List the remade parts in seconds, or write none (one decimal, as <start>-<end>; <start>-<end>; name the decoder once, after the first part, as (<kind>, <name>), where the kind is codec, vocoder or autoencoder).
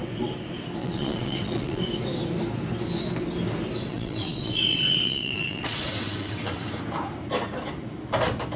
0.8-1.8 (vocoder, WaveNeXt); 3.9-6.7